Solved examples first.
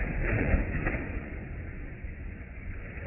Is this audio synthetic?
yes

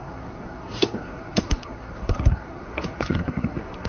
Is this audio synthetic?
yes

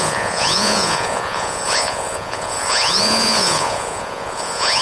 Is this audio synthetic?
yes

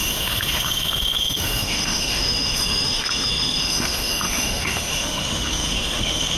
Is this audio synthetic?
yes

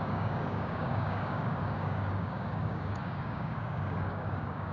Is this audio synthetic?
yes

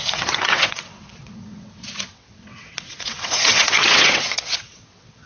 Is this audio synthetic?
yes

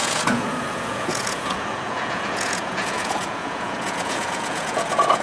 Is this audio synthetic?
yes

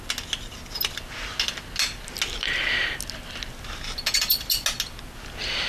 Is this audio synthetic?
no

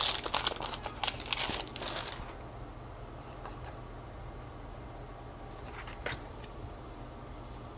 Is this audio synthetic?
no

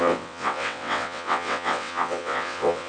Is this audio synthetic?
yes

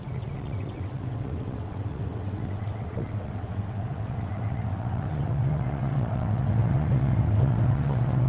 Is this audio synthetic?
yes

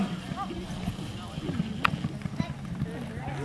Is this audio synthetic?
no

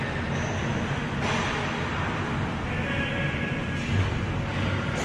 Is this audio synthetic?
no